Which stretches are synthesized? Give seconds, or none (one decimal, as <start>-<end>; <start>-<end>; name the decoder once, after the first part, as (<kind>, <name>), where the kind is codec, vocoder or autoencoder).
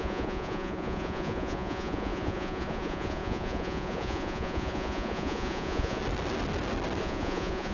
0.0-6.0 (vocoder, Vocos); 7.0-7.7